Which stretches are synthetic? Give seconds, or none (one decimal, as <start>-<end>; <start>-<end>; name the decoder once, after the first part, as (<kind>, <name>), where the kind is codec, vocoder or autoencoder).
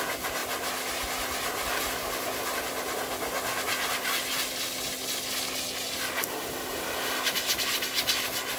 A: none